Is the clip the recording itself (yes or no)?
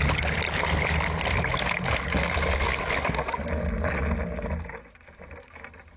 yes